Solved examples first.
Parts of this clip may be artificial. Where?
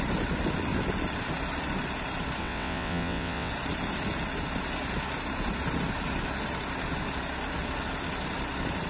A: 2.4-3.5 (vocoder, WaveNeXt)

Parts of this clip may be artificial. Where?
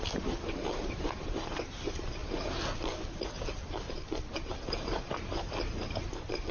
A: 0.0-2.2 (vocoder, BigVGAN v2); 4.4-6.5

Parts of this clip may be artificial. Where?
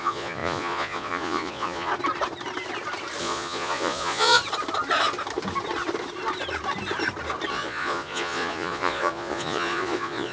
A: 0.0-1.9 (vocoder, Vocos); 3.2-4.4; 7.5-10.3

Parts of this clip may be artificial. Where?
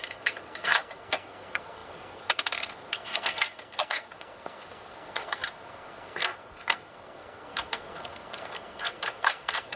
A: 0.0-9.8 (codec, SNAC)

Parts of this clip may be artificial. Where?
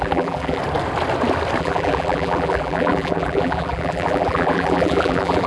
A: 0.0-0.6 (vocoder, BigVGAN v2); 1.6-5.5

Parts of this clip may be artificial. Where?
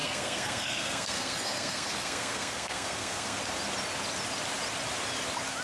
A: 0.0-3.4 (codec, SNAC)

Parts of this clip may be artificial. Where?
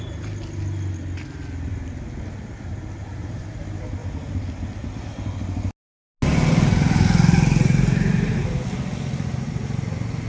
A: none